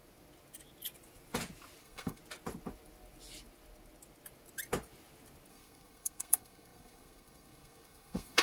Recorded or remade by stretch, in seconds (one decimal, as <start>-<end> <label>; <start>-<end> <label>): 0.0-1.8 recorded; 1.8-2.2 remade; 2.2-5.5 recorded; 5.5-8.4 remade